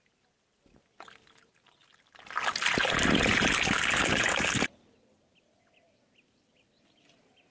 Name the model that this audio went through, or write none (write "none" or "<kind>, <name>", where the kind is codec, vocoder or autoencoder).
none